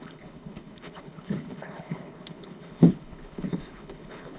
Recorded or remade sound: remade